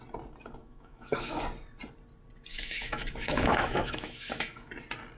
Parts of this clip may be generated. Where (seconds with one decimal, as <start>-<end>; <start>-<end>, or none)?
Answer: 0.6-1.4; 2.5-4.7